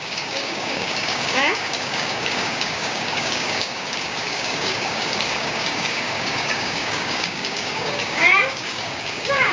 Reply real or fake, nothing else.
fake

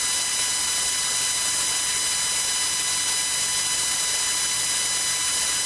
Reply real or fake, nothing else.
real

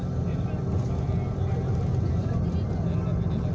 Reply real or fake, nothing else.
real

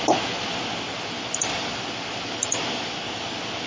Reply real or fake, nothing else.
real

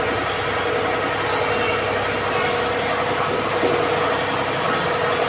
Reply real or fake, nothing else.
real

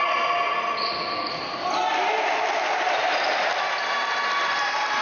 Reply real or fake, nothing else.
real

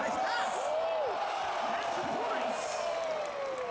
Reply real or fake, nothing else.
real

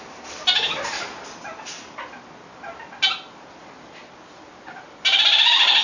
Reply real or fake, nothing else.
real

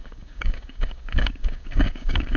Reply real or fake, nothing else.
fake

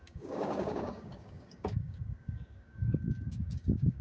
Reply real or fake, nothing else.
fake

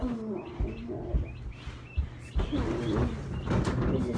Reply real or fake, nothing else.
real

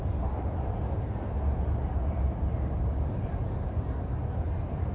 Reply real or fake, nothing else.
real